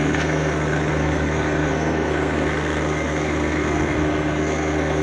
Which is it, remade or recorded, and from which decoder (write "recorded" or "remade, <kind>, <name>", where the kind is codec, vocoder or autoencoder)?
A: remade, codec, SNAC